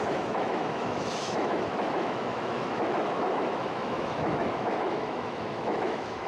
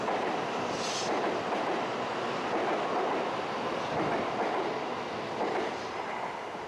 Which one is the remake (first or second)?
first